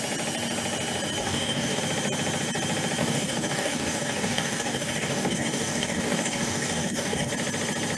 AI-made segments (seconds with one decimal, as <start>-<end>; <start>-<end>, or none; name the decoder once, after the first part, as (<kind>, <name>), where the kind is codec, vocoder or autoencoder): 1.2-1.8 (codec, DAC); 3.0-7.3